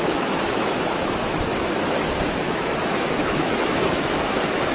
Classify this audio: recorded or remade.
remade